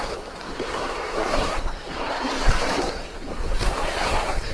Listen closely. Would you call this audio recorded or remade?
remade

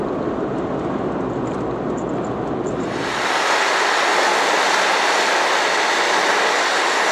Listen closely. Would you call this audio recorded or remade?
recorded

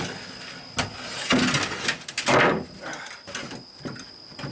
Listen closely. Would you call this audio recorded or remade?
recorded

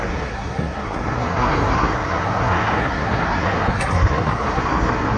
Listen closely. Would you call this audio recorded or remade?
remade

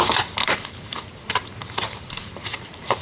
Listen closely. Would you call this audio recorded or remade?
remade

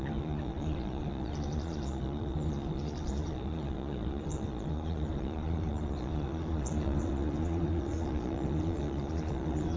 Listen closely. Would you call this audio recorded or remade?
remade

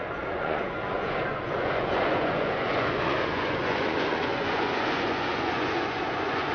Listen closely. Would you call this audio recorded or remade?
remade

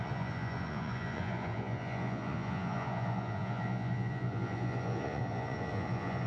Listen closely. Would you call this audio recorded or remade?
remade